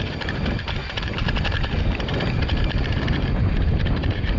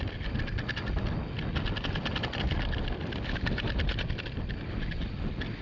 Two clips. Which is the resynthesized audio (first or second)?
first